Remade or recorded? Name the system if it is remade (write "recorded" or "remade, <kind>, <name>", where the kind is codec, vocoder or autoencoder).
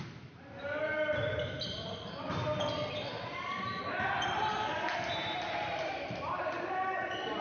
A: remade, vocoder, BigVGAN v2